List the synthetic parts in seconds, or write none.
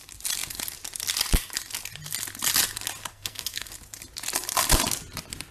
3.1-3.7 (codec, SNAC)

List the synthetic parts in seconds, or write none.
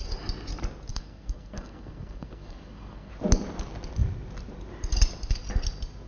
0.9-3.1 (codec, SNAC)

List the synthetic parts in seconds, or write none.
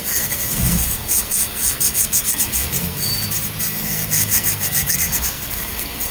0.0-3.1 (codec, SNAC); 3.6-6.1